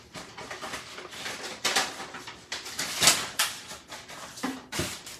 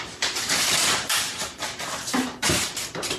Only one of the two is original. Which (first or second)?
first